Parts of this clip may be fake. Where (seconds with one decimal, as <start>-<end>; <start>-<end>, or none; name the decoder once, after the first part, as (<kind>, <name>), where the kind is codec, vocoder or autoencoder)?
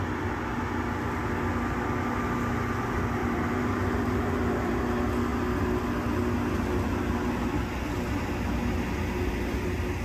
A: 3.2-4.8 (vocoder, BigVGAN v2)